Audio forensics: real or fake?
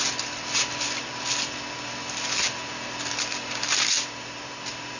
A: real